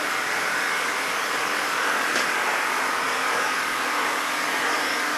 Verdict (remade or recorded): remade